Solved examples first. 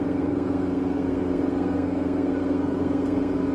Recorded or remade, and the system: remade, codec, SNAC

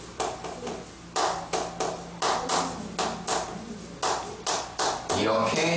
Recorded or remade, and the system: recorded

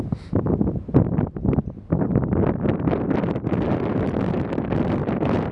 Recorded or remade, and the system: recorded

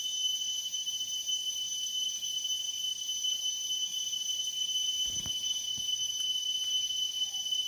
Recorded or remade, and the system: recorded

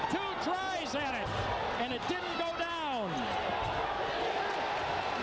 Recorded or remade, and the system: recorded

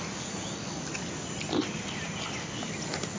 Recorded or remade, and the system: recorded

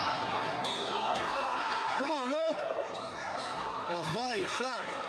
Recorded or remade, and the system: remade, codec, SNAC